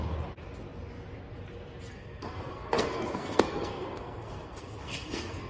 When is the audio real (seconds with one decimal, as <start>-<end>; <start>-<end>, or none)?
0.0-1.9